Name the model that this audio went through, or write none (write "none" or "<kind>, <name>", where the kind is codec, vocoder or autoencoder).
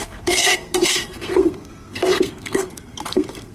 codec, SNAC